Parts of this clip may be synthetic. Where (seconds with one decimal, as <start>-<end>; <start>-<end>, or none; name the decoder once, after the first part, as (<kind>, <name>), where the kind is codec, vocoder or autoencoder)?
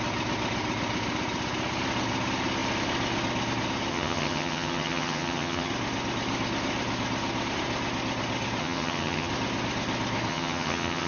3.9-5.7 (vocoder, HiFi-GAN); 8.6-9.3; 10.3-11.1